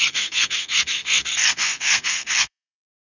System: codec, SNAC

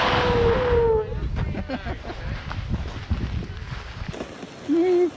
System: none